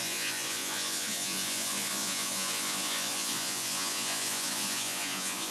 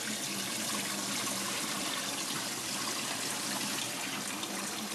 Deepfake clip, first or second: first